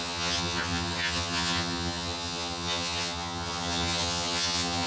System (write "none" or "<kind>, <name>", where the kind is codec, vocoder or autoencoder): vocoder, HiFi-GAN